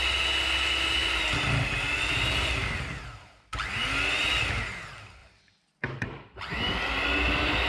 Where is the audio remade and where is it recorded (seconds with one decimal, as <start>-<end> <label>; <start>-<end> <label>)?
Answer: 0.0-5.2 recorded; 5.2-6.5 remade; 6.5-7.7 recorded

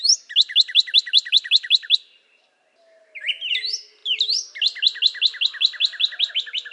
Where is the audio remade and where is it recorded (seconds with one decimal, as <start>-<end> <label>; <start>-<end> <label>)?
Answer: 0.0-6.7 recorded

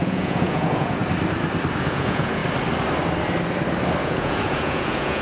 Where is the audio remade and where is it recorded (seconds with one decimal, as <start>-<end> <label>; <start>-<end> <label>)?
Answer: 0.0-1.0 remade; 1.0-1.8 recorded; 1.8-2.4 remade; 2.4-4.0 recorded; 4.0-5.2 remade

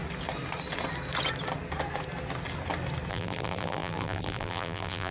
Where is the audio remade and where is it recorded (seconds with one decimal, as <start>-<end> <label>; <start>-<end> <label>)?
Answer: 0.0-3.1 recorded; 3.1-5.1 remade

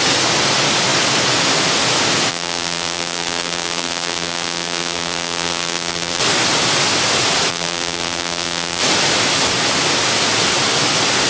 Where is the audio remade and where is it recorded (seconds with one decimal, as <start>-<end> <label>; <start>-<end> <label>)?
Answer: 0.0-2.3 recorded; 2.3-6.2 remade; 6.2-7.5 recorded; 7.5-8.8 remade; 8.8-11.3 recorded

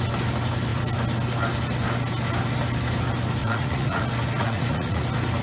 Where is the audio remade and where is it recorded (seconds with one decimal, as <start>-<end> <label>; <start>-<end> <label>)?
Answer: 0.0-3.4 recorded; 3.4-4.0 remade; 4.0-4.4 recorded; 4.4-5.0 remade; 5.0-5.4 recorded

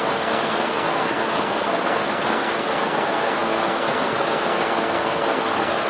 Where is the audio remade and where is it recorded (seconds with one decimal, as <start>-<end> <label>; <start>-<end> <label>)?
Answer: 0.0-5.9 remade